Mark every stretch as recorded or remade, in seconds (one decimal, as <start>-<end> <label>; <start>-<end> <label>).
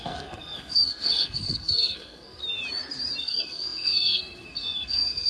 0.0-2.4 remade; 2.4-3.2 recorded; 3.2-5.3 remade